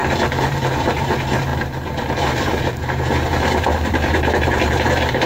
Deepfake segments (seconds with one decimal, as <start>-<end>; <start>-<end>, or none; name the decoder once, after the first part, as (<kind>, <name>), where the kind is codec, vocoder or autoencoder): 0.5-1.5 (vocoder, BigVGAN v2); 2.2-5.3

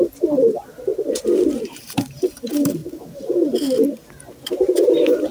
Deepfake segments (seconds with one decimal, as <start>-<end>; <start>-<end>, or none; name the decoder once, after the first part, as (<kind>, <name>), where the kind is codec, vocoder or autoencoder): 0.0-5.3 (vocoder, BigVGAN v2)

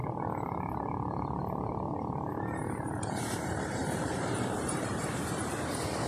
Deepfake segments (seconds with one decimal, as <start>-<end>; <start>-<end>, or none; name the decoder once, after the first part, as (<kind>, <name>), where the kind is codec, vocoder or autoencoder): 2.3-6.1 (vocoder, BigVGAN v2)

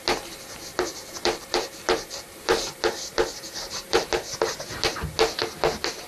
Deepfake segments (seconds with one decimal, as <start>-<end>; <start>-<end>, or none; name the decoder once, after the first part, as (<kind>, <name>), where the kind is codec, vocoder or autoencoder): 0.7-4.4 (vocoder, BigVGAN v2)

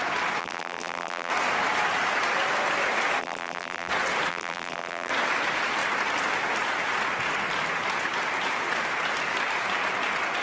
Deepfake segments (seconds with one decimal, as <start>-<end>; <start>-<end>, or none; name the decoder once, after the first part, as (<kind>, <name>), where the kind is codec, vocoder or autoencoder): 0.4-1.3 (vocoder, BigVGAN v2); 3.2-3.9; 4.3-5.1

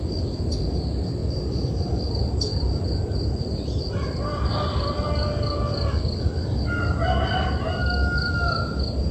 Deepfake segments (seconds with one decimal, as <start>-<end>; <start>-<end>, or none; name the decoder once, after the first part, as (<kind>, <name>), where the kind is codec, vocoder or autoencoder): 1.2-1.9 (vocoder, BigVGAN v2); 2.5-3.8; 4.3-6.3; 7.8-8.4